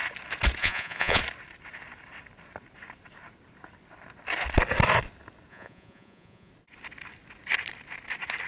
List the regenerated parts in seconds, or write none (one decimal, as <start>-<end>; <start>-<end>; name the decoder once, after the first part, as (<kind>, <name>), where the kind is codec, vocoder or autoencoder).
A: 0.6-1.2 (vocoder, Vocos); 5.5-6.5